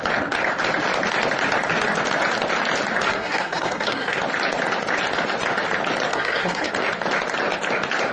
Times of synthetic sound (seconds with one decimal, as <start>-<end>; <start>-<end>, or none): 3.1-4.2; 6.1-6.7